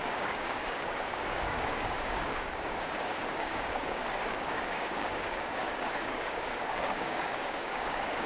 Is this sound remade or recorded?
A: remade